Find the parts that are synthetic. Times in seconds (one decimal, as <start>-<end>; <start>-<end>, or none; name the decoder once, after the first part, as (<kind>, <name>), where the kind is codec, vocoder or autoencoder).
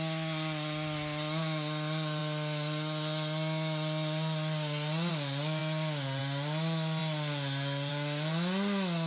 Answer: none